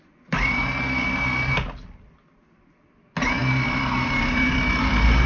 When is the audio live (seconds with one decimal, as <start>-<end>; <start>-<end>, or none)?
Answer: 0.0-5.3